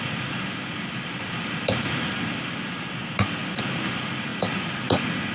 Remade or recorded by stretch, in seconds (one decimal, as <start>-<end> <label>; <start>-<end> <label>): 0.0-4.3 remade; 4.3-5.3 recorded